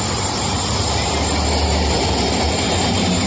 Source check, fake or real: real